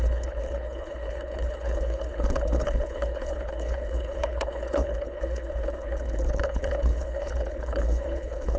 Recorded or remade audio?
remade